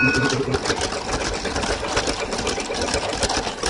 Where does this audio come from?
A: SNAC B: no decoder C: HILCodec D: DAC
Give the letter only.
B